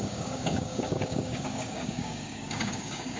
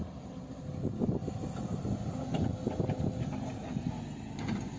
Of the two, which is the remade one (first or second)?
first